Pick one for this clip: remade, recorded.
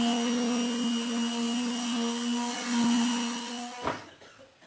recorded